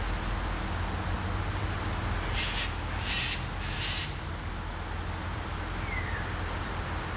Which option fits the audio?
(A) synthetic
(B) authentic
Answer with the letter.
B